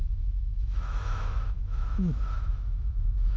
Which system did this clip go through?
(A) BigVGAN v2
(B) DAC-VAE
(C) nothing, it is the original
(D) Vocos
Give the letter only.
B